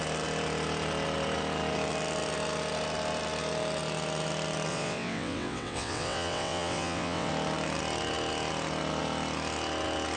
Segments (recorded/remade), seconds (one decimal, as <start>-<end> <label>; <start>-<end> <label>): 0.0-4.7 recorded; 4.7-7.3 remade; 7.3-10.2 recorded